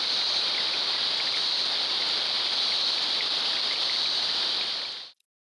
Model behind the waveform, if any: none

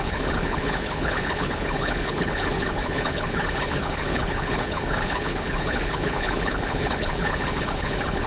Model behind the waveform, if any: codec, HILCodec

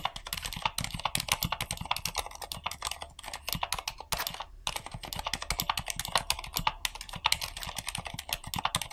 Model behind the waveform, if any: none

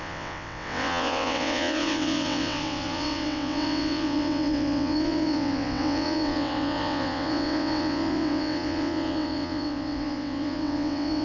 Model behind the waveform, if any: vocoder, WaveNeXt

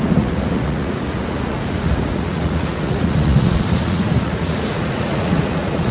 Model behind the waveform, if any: vocoder, Vocos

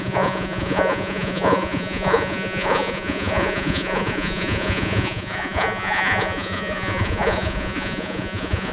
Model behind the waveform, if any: vocoder, Vocos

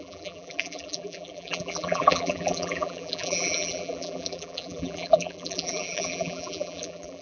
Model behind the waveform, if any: vocoder, BigVGAN v2